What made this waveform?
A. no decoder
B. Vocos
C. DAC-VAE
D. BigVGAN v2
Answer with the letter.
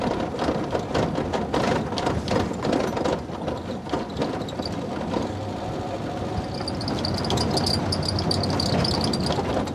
A